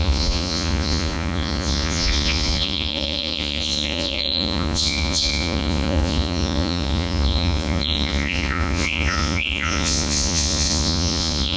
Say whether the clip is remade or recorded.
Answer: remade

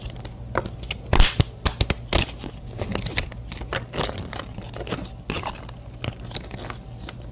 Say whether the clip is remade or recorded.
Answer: recorded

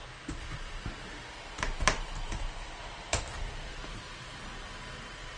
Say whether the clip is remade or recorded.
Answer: recorded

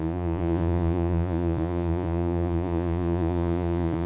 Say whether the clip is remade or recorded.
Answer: remade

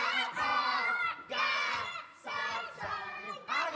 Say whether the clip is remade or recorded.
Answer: remade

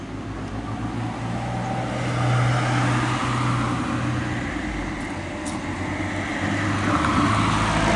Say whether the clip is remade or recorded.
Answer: recorded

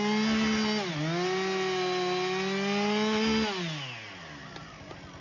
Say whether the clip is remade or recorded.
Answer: recorded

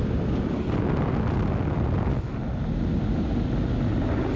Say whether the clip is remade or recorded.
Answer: recorded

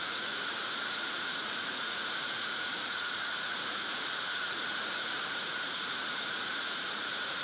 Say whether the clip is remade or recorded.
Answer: remade